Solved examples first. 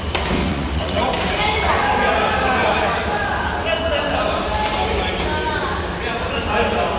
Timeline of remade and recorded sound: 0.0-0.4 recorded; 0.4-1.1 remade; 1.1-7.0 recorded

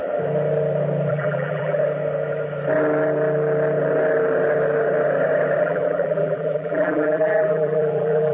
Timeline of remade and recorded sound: 0.0-1.1 recorded; 1.1-1.8 remade; 1.8-5.6 recorded; 5.6-8.3 remade

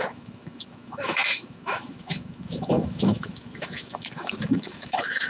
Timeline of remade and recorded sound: 0.0-5.3 remade